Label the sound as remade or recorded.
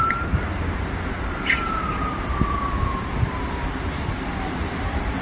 remade